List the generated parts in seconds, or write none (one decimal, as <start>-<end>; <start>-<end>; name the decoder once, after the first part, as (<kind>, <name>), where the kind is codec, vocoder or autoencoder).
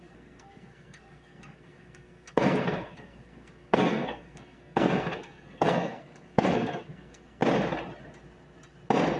0.0-7.4 (codec, SNAC)